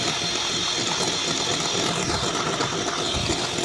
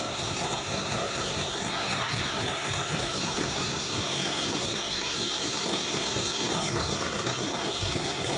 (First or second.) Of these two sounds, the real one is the first